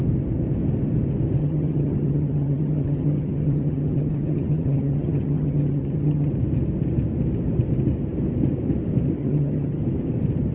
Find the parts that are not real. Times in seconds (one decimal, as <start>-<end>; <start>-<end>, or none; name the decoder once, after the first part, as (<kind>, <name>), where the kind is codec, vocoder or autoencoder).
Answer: 1.4-6.3 (vocoder, HiFi-GAN); 9.2-9.8